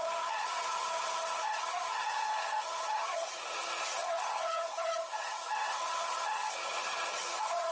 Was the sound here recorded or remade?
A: remade